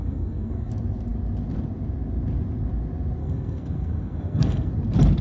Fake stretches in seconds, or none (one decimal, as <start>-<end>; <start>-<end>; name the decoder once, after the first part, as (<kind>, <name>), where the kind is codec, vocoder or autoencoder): 0.0-0.7 (codec, SNAC); 3.2-4.7